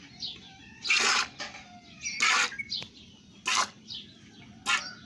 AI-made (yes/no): no